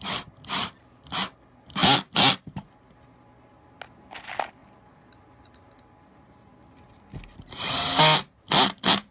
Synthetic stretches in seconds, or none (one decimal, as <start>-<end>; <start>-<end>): none